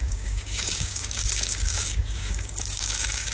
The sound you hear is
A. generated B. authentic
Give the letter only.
A